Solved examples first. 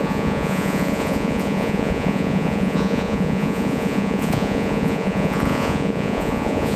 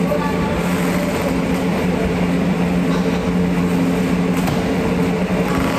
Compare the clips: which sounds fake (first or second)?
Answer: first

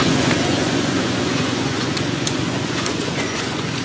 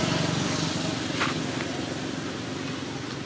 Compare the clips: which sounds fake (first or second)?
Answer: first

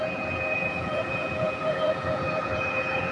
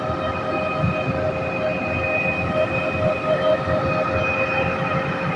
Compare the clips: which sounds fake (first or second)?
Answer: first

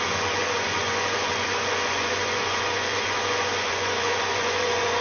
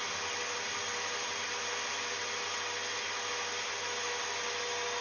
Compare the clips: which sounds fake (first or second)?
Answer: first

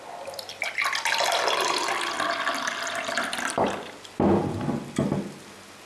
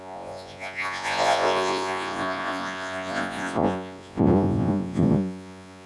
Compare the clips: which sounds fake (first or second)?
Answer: second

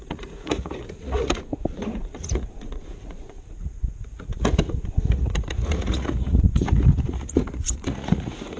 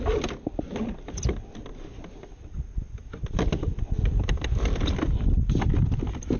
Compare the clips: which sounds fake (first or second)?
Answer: first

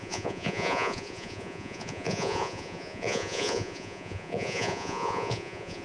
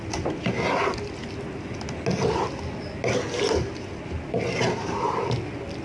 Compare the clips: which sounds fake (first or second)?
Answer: first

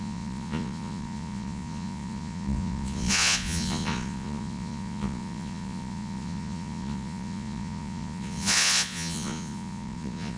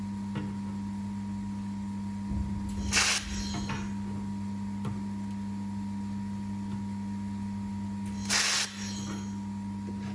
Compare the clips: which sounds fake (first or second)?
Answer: first